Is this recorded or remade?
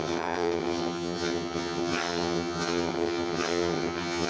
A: remade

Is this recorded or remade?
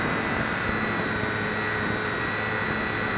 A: recorded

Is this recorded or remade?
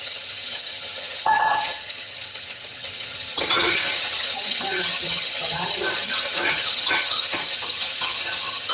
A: remade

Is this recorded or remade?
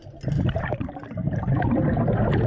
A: recorded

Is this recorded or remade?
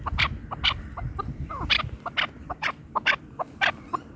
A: recorded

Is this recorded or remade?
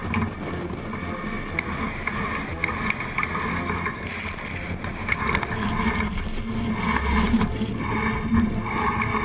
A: recorded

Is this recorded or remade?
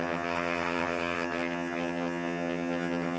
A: remade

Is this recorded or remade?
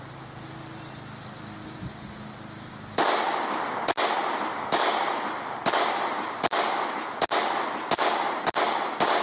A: recorded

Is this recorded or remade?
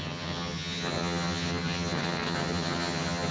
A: remade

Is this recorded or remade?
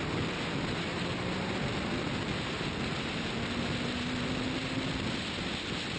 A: recorded